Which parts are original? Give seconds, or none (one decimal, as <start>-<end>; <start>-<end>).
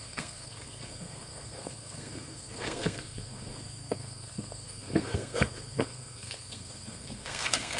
none